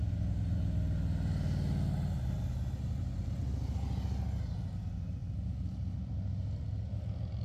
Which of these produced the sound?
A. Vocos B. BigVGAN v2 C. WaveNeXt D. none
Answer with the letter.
D